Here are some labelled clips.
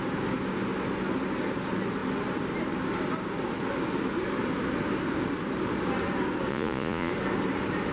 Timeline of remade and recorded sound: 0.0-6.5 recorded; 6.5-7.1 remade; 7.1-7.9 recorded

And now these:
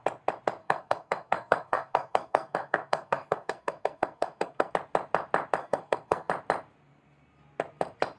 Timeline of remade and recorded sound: 0.0-0.6 recorded; 0.6-4.7 remade; 4.7-5.6 recorded; 5.6-6.3 remade; 6.3-8.2 recorded

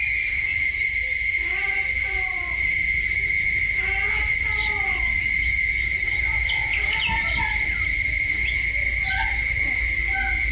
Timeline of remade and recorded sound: 0.0-10.5 recorded

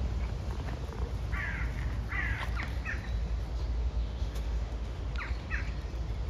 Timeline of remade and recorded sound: 0.0-3.8 recorded; 3.8-5.0 remade; 5.0-6.3 recorded

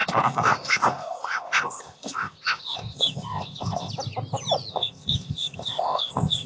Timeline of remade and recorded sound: 0.0-3.9 remade; 3.9-4.7 recorded; 4.7-6.5 remade

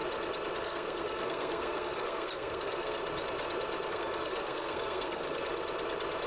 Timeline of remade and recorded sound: 0.0-0.6 recorded; 0.6-3.0 remade; 3.0-3.9 recorded; 3.9-5.4 remade; 5.4-6.3 recorded

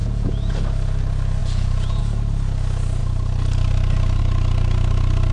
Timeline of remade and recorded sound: 0.0-0.5 remade; 0.5-1.4 recorded; 1.4-2.0 remade; 2.0-5.3 recorded